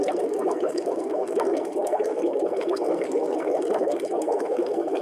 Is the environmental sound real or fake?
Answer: fake